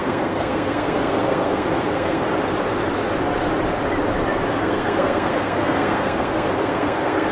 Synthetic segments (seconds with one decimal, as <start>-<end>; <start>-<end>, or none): 0.0-2.2; 4.5-7.3